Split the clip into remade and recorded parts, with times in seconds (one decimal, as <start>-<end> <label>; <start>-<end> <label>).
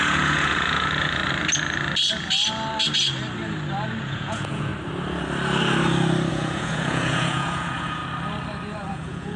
0.0-1.2 remade; 1.2-4.0 recorded; 4.0-4.7 remade; 4.7-6.3 recorded; 6.3-8.0 remade; 8.0-8.9 recorded; 8.9-9.4 remade